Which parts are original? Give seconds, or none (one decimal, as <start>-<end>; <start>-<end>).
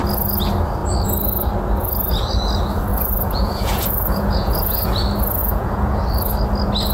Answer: 0.0-2.9; 5.0-5.4; 6.0-6.9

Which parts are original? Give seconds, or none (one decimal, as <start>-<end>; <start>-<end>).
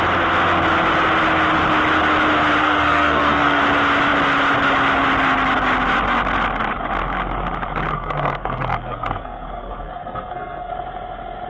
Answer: 0.0-2.6; 3.6-7.9; 10.7-11.5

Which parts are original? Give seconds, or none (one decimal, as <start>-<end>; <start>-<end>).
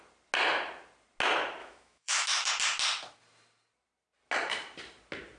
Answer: 0.0-1.6; 2.5-5.4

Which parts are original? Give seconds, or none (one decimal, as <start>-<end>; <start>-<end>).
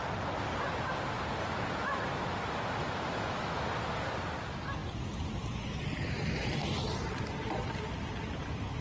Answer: 0.0-2.8; 3.7-8.8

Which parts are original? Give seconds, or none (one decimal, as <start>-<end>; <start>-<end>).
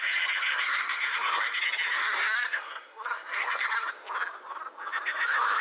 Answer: 0.0-0.5; 1.6-2.0; 3.9-5.6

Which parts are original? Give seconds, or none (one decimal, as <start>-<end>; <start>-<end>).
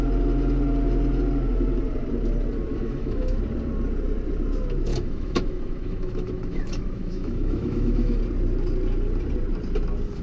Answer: 0.0-2.7; 3.4-4.9; 8.2-10.2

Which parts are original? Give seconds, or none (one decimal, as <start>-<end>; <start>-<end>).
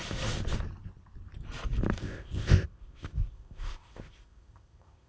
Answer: 0.0-2.0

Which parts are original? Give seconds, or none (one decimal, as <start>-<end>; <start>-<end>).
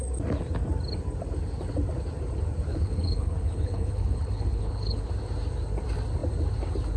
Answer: 0.0-2.7; 5.1-7.0